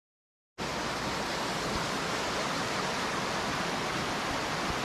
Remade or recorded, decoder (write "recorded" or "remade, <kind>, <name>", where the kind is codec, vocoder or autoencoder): recorded